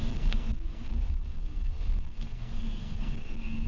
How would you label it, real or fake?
fake